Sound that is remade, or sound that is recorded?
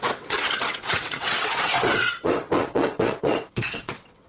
remade